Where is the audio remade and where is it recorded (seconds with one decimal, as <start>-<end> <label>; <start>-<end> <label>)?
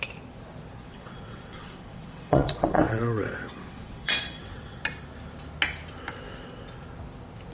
0.0-0.8 recorded; 0.8-4.8 remade; 4.8-7.5 recorded